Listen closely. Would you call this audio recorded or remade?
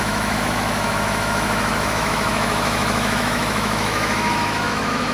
remade